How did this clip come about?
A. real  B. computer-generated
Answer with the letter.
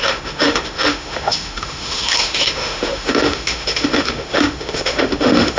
B